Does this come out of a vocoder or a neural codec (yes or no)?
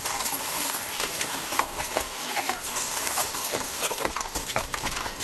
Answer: yes